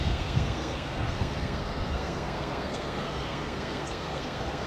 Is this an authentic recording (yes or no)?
no